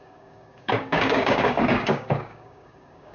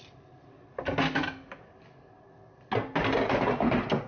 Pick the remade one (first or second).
first